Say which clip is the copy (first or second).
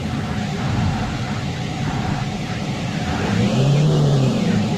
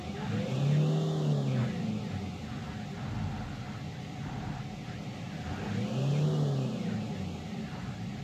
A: first